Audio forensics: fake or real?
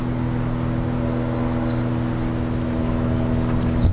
real